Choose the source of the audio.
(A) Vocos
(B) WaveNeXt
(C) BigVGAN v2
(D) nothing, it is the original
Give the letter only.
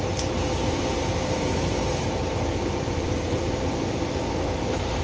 C